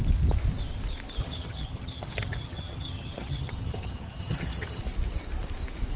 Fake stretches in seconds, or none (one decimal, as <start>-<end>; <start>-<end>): 1.2-4.8